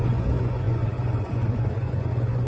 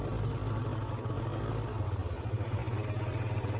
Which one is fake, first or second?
first